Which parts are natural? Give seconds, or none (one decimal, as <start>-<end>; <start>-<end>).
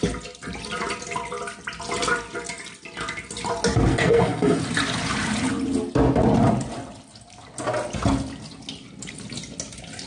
0.0-3.9; 4.6-10.1